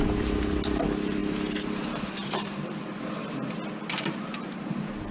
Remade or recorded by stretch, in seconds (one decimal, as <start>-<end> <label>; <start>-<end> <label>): 0.0-5.1 recorded